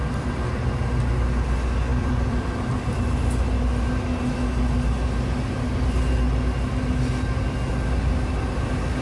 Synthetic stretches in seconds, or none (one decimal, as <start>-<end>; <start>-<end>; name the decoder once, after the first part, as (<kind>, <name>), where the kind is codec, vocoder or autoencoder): 1.9-3.0 (vocoder, BigVGAN v2)